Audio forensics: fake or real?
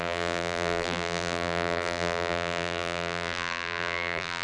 fake